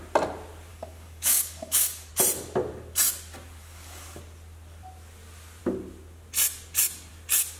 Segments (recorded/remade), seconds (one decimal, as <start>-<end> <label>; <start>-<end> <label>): 0.0-0.7 recorded; 0.7-2.1 remade; 2.1-3.6 recorded; 3.6-4.2 remade; 4.2-7.6 recorded